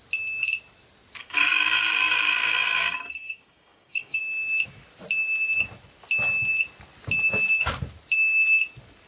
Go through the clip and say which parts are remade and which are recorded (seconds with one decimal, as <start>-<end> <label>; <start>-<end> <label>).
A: 0.0-1.2 recorded; 1.2-4.2 remade; 4.2-9.1 recorded